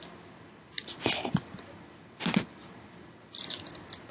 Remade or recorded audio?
recorded